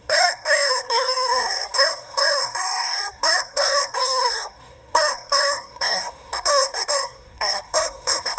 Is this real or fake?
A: fake